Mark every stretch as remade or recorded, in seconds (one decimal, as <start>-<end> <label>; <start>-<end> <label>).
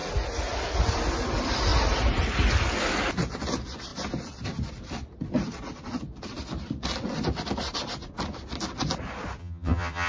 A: 0.0-9.4 recorded; 9.4-10.1 remade